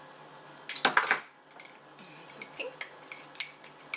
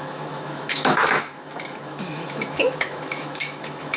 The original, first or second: first